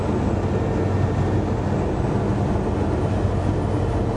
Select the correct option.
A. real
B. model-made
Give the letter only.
A